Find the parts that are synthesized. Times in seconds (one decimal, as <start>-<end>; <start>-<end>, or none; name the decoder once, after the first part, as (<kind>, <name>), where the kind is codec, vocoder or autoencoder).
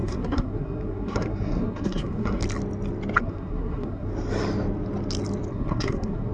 0.0-2.4 (codec, SNAC); 3.2-4.1; 5.5-6.3